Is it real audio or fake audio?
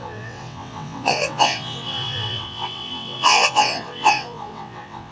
fake